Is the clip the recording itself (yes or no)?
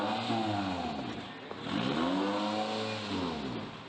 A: yes